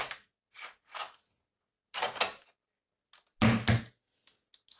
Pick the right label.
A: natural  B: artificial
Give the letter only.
A